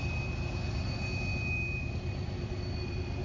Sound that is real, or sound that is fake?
real